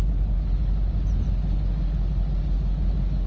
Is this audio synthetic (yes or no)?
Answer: no